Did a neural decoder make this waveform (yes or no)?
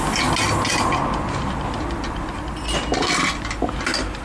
no